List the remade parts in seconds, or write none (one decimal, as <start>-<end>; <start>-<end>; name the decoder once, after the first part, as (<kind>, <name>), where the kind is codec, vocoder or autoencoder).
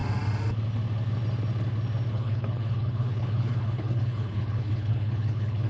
2.1-5.7 (codec, HILCodec)